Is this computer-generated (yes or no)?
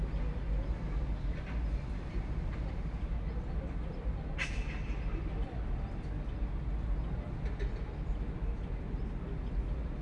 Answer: no